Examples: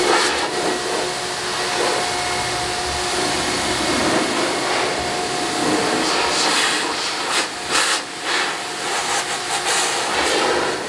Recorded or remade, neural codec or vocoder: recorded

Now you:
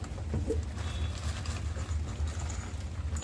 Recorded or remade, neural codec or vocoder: recorded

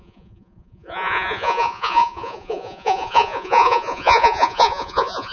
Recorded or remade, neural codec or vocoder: remade, vocoder, Vocos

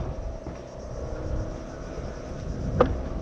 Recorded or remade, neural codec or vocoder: recorded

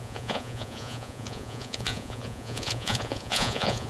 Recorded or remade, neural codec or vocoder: remade, vocoder, Vocos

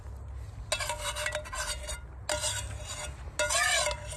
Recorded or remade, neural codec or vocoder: recorded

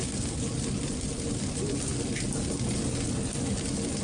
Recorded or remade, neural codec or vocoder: recorded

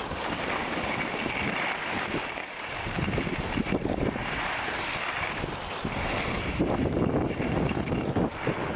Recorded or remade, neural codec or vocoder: recorded